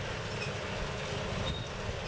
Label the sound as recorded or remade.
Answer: recorded